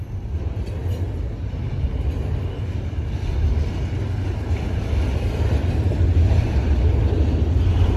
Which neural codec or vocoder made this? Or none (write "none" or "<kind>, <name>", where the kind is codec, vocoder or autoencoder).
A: none